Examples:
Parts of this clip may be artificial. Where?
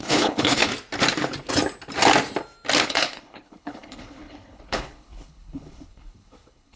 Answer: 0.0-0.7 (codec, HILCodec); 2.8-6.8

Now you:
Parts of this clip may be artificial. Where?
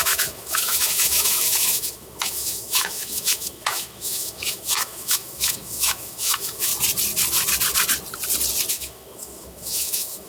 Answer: 0.0-6.7 (autoencoder, DAC-VAE); 8.7-10.3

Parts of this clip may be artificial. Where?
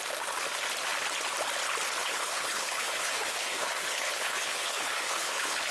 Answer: 2.0-5.7 (codec, HILCodec)